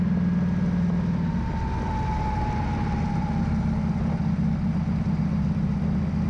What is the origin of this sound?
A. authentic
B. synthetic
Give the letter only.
A